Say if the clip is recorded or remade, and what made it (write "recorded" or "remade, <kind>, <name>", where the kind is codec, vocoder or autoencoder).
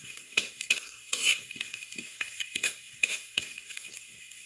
remade, codec, SNAC